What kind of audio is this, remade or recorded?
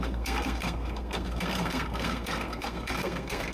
remade